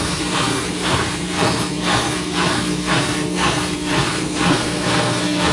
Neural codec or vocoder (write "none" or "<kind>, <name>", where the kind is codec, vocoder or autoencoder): codec, SNAC